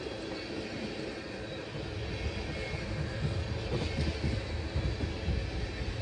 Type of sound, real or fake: real